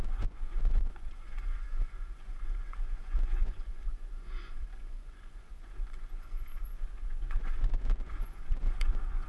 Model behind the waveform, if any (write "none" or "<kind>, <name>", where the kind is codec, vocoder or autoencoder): vocoder, Vocos